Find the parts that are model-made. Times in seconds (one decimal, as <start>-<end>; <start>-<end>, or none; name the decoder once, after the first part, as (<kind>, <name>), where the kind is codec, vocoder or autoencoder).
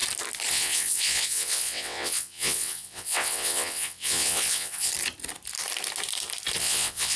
0.5-4.9 (vocoder, WaveNeXt); 6.6-7.2